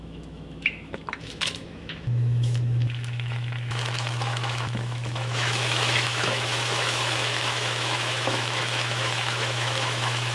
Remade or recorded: remade